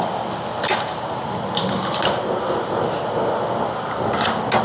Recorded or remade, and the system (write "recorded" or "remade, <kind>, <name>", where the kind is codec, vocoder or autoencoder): recorded